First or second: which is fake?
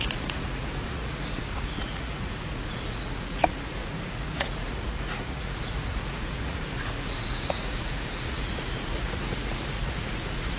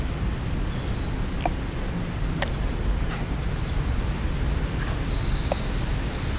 first